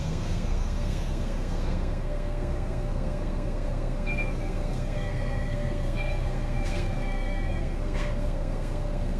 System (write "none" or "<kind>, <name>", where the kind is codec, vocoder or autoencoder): codec, SNAC